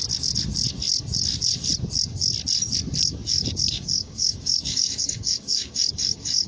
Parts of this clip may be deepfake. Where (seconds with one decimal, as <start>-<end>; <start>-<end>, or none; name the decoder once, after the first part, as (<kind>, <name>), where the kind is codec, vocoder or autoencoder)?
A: 3.1-6.5 (codec, DAC)